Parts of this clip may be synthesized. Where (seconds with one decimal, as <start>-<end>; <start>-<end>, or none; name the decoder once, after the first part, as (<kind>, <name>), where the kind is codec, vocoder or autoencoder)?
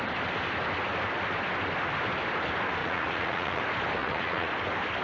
2.8-3.6 (vocoder, Vocos); 4.0-4.5